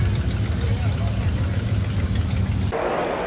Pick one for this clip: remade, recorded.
recorded